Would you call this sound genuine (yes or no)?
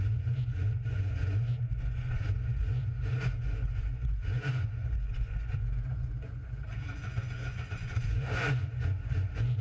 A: no